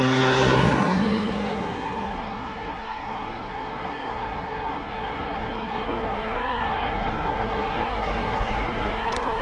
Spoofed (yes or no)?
yes